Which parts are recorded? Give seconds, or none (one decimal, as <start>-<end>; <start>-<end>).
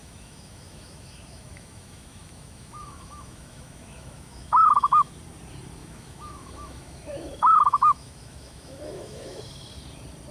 5.1-5.8; 9.4-10.3